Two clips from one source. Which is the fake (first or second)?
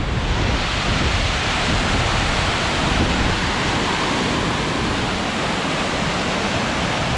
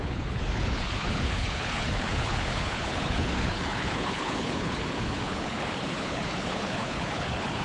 second